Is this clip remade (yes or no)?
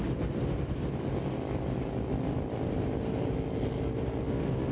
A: no